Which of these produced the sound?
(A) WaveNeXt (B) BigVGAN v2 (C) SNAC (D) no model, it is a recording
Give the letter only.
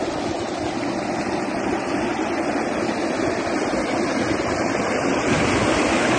D